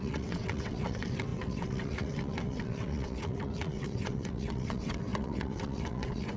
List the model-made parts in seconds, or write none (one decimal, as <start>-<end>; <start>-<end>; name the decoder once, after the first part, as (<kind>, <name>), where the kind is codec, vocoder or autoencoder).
0.0-6.4 (vocoder, WaveNeXt)